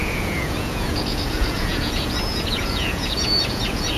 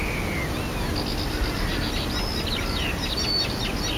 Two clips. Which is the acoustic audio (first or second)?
second